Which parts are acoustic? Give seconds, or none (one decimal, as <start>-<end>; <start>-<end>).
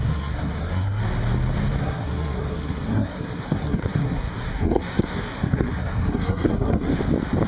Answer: 1.0-1.8; 6.9-7.5